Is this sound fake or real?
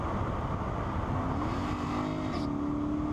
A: real